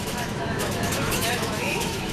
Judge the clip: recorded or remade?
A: remade